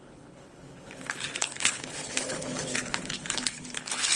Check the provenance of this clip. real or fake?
fake